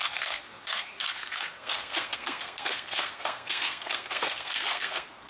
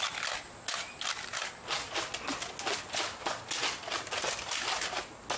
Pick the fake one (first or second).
first